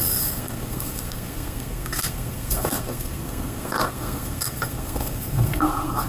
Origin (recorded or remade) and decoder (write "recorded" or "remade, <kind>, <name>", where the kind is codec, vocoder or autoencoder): remade, codec, SNAC